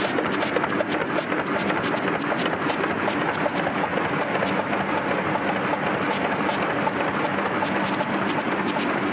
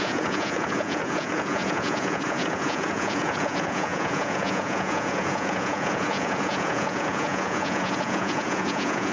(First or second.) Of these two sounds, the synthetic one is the second